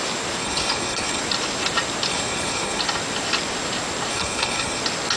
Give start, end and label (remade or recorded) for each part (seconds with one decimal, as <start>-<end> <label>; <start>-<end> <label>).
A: 0.0-0.4 recorded; 0.4-1.2 remade; 1.2-2.1 recorded; 2.1-2.8 remade; 2.8-4.1 recorded; 4.1-4.8 remade; 4.8-5.2 recorded